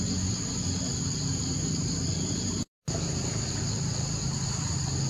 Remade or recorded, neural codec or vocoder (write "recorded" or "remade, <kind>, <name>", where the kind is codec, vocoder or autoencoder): remade, vocoder, BigVGAN v2